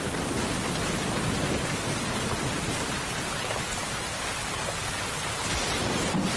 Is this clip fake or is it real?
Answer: real